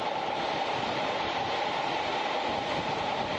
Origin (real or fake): fake